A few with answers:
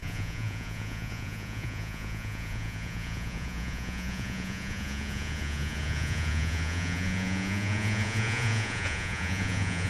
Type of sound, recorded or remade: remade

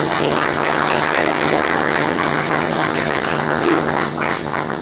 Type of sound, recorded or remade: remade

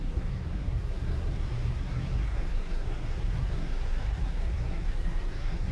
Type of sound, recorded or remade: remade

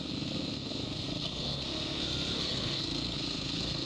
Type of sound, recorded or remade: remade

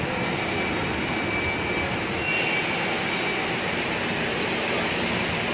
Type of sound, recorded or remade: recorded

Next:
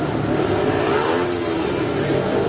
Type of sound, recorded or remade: recorded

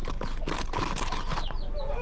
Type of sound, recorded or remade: recorded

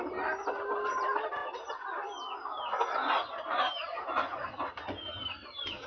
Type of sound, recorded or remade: recorded